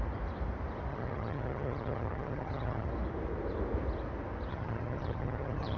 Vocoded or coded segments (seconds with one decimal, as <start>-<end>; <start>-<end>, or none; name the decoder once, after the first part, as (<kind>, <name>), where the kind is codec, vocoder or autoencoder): 0.9-2.9 (vocoder, HiFi-GAN); 4.5-5.8